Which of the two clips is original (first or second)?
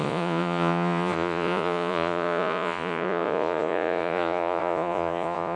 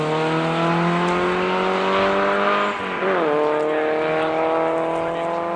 second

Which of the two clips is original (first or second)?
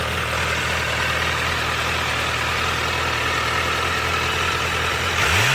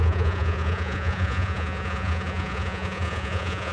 first